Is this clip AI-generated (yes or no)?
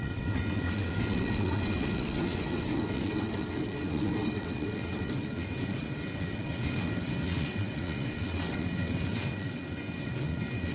yes